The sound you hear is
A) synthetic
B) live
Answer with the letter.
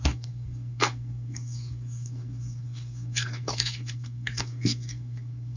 A